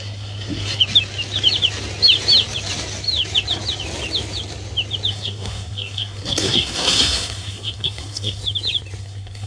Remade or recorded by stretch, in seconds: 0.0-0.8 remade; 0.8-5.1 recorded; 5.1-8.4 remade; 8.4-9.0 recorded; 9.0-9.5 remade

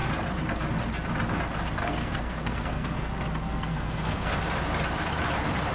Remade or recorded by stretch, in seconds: 0.0-1.8 recorded; 1.8-3.1 remade; 3.1-3.5 recorded; 3.5-4.3 remade; 4.3-5.7 recorded

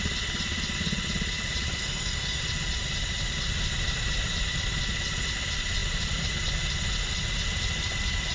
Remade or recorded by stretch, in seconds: 0.0-1.8 recorded; 1.8-2.4 remade; 2.4-8.3 recorded

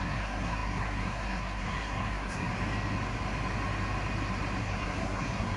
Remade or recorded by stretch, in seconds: 0.0-2.5 remade; 2.5-4.6 recorded; 4.6-5.6 remade

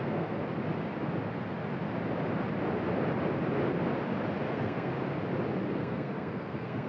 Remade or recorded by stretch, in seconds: 0.0-0.4 remade; 0.4-4.5 recorded; 4.5-4.9 remade; 4.9-5.7 recorded; 5.7-6.9 remade

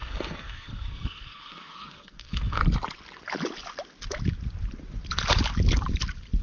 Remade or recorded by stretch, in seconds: 0.0-2.6 remade; 2.6-6.4 recorded